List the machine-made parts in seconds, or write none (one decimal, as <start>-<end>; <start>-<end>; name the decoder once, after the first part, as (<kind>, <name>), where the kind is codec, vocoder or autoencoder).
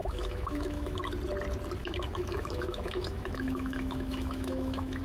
0.0-1.0 (autoencoder, DAC-VAE); 1.8-5.0